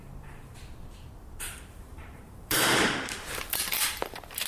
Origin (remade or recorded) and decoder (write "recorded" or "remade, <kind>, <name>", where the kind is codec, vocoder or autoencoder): remade, vocoder, BigVGAN v2